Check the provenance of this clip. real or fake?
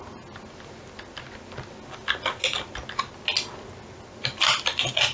real